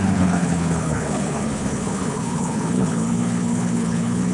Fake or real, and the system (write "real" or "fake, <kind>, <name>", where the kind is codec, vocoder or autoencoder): fake, codec, HILCodec